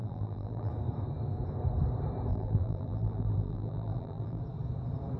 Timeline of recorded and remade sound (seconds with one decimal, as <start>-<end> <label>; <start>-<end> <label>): 0.0-0.7 remade; 0.7-2.3 recorded; 2.3-4.4 remade; 4.4-5.2 recorded

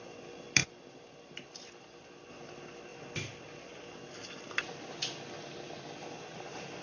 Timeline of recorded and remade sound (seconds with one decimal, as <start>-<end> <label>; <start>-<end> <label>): 0.0-6.8 recorded

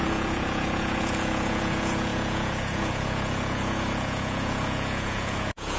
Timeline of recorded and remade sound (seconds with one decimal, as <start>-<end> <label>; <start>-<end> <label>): 0.0-5.8 remade

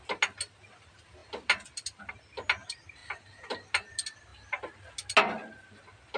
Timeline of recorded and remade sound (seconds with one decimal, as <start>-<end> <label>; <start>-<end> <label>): 0.0-6.2 recorded

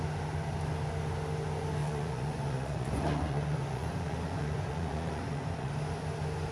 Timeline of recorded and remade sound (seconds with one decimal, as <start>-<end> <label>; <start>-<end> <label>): 0.0-1.8 recorded; 1.8-5.7 remade; 5.7-6.5 recorded

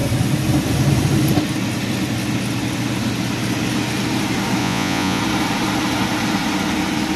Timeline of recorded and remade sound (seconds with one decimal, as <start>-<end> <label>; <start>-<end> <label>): 0.0-4.6 recorded; 4.6-5.2 remade; 5.2-7.2 recorded

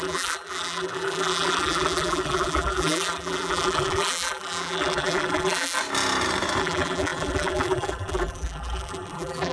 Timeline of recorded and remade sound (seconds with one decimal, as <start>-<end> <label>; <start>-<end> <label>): 0.0-5.8 remade; 5.8-6.6 recorded; 6.6-9.5 remade